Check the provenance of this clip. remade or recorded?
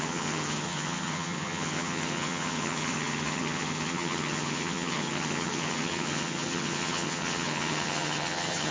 remade